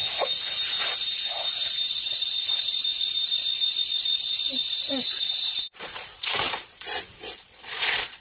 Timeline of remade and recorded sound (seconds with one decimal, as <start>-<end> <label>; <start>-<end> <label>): 0.0-1.9 recorded; 1.9-8.2 remade